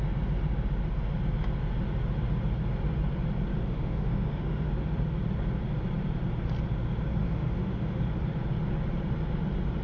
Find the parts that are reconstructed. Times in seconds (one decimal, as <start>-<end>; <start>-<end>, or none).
3.5-4.7; 7.2-8.0

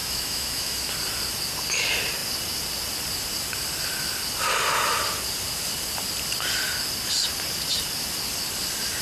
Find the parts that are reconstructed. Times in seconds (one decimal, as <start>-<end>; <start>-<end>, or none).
0.0-0.9